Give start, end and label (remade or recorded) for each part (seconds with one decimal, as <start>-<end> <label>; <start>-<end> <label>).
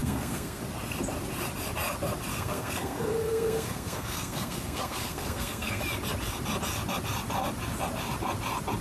0.0-0.6 remade; 0.6-2.3 recorded; 2.3-5.8 remade; 5.8-8.8 recorded